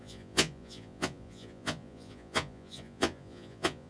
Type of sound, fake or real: fake